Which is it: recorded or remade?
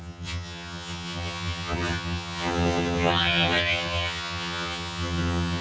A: remade